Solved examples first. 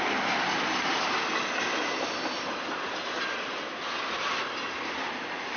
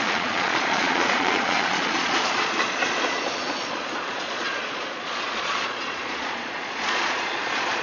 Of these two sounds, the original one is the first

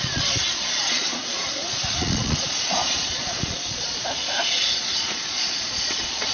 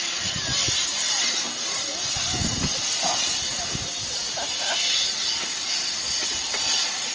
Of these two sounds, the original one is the second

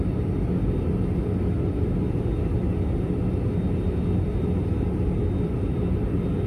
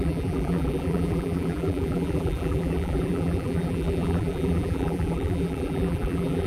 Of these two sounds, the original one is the first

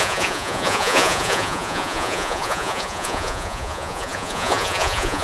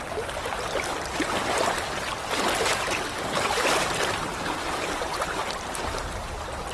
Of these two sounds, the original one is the second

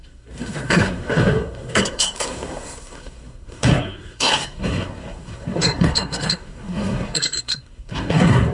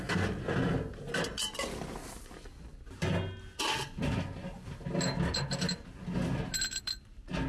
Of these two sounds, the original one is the second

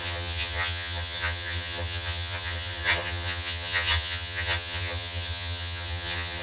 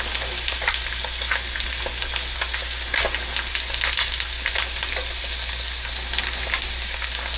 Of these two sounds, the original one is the second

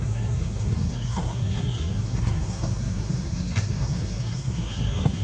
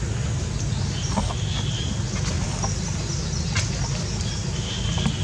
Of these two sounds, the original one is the second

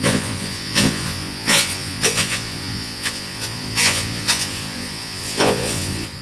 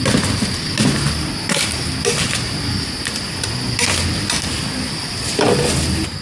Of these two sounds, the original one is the second